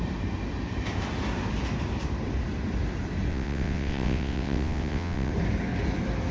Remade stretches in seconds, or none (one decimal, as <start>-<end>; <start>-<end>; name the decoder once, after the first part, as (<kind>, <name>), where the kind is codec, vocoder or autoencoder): 3.3-5.3 (vocoder, WaveNeXt)